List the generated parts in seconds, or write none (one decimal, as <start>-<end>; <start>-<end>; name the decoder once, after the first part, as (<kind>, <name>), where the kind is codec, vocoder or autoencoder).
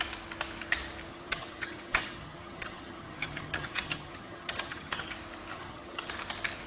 1.1-5.1 (vocoder, HiFi-GAN); 5.5-6.1